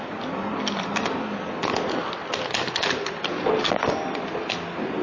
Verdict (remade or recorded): recorded